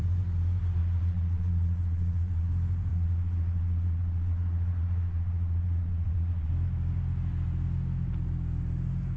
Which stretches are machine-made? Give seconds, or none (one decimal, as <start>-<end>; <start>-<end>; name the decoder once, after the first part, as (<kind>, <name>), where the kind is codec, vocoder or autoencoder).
0.8-2.5 (vocoder, Vocos); 2.9-6.5